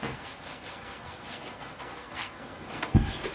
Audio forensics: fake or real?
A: fake